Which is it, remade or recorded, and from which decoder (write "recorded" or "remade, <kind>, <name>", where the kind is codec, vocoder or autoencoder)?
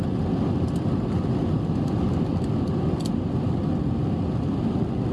recorded